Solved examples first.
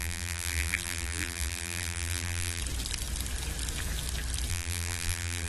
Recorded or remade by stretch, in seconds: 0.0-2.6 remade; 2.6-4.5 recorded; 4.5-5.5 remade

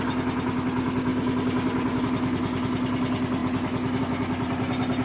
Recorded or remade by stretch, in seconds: 0.0-5.0 recorded

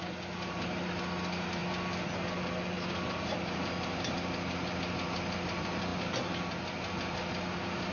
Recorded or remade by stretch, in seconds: 0.0-7.9 recorded

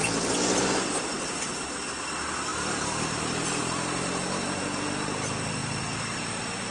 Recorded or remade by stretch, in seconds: 0.0-6.7 recorded

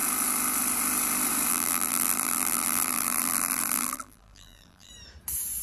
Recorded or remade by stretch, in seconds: 0.0-1.5 recorded; 1.5-4.9 remade; 4.9-5.6 recorded

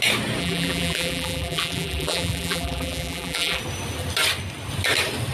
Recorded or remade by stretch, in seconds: 0.0-0.4 recorded; 0.4-3.6 remade; 3.6-5.3 recorded

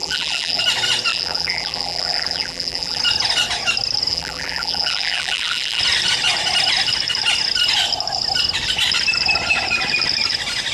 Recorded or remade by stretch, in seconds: 0.0-0.6 remade; 0.6-1.1 recorded; 1.1-3.0 remade; 3.0-4.1 recorded; 4.1-5.8 remade; 5.8-10.7 recorded

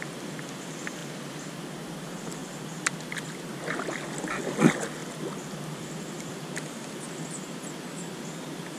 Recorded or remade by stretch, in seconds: 0.0-5.0 recorded; 5.0-6.9 remade; 6.9-8.8 recorded